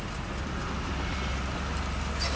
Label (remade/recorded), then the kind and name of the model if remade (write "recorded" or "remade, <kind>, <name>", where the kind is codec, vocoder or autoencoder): recorded